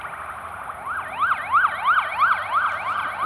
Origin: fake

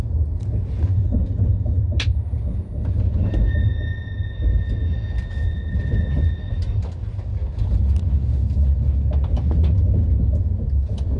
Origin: real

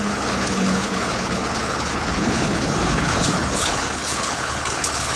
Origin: fake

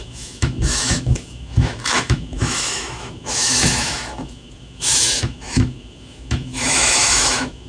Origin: fake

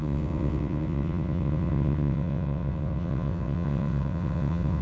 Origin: fake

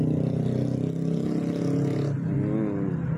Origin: real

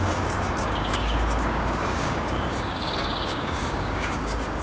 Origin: fake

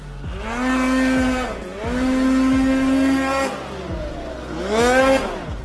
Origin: real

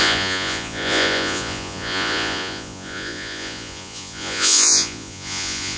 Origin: fake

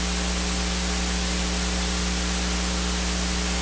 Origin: real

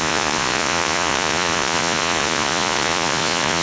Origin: fake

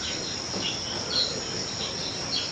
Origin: real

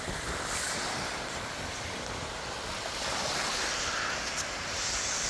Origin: real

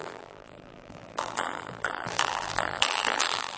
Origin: fake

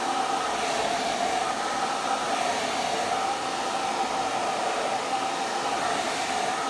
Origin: real